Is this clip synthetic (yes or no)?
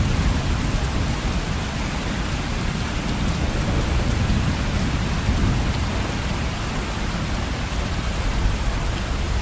no